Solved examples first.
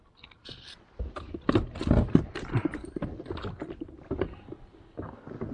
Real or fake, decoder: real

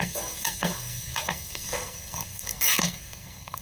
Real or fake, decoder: fake, codec, SNAC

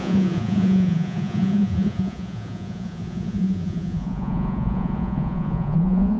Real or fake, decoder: fake, vocoder, Vocos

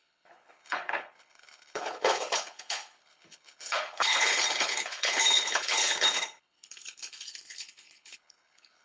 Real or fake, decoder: fake, codec, HILCodec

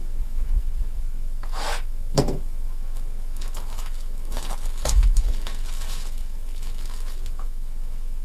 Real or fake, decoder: fake, codec, SNAC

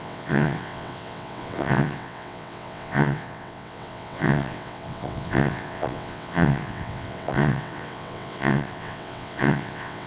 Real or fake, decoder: fake, vocoder, WaveNeXt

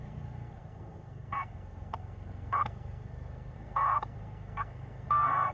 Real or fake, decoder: fake, codec, SNAC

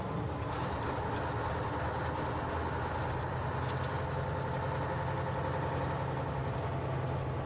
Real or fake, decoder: real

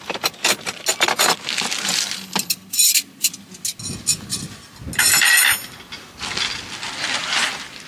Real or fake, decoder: real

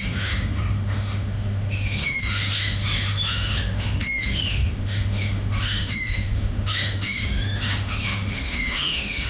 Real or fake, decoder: fake, autoencoder, DAC-VAE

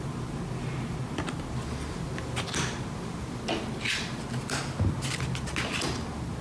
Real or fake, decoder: real